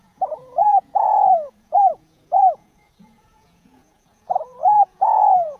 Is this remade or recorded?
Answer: remade